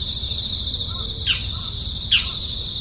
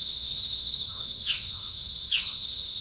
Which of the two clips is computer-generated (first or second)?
second